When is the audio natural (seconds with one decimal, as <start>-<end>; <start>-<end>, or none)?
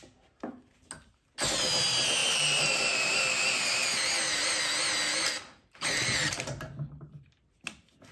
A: 0.0-2.2; 4.6-8.1